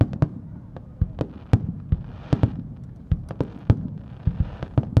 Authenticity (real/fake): real